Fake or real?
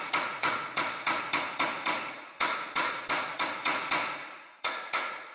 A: fake